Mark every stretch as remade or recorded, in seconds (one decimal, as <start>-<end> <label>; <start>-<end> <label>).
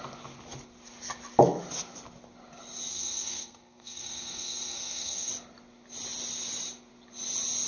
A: 0.0-2.9 recorded; 2.9-5.3 remade; 5.3-7.7 recorded